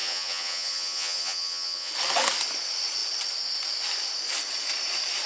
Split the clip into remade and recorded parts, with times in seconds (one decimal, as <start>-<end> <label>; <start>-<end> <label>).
0.0-1.9 remade; 1.9-5.3 recorded